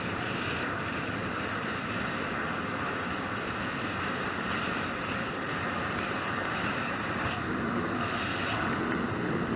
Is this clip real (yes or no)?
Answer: no